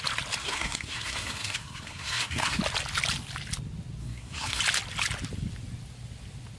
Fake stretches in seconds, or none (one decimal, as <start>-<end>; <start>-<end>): 0.4-2.6; 4.0-4.6

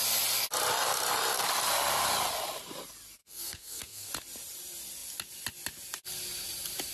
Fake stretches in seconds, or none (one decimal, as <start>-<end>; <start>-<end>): 3.2-4.1

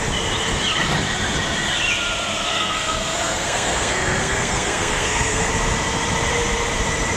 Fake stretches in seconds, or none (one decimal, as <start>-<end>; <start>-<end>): 2.5-5.5

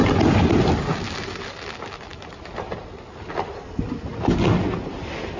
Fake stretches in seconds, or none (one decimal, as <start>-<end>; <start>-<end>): none

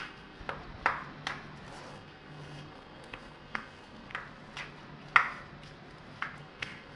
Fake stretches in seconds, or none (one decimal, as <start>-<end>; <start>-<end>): 0.0-0.4; 1.9-4.1; 6.4-7.0

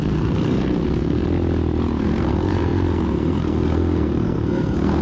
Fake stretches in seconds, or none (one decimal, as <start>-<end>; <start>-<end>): 0.0-1.2; 2.0-5.0